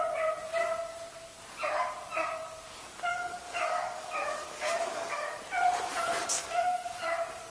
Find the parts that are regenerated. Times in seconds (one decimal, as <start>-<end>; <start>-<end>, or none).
3.1-5.4; 6.2-7.0